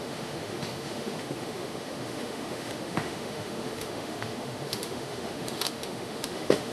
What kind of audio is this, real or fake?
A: fake